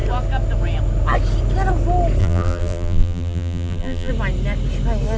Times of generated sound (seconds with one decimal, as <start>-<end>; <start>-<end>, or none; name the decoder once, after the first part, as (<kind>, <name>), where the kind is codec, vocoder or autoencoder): 2.2-4.1 (vocoder, BigVGAN v2)